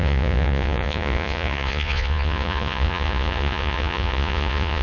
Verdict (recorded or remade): remade